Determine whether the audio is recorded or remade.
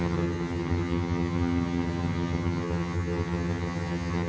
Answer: remade